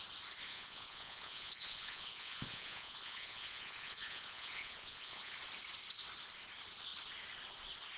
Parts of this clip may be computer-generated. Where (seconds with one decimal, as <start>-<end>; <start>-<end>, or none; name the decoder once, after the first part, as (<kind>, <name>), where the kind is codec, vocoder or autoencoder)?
0.5-5.3 (vocoder, Vocos)